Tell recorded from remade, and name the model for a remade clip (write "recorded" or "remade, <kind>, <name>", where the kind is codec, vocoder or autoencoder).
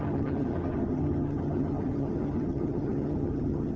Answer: remade, vocoder, HiFi-GAN